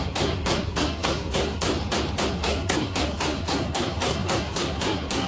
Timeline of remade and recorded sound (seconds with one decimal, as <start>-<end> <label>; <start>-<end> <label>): 0.0-1.7 remade; 1.7-2.3 recorded; 2.3-5.3 remade